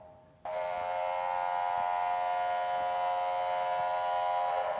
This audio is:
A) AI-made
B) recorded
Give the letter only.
B